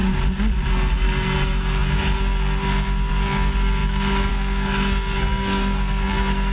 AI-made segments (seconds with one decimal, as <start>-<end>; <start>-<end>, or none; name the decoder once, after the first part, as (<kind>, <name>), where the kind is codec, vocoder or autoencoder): 0.7-6.5 (codec, SNAC)